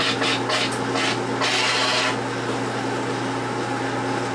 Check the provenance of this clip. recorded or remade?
recorded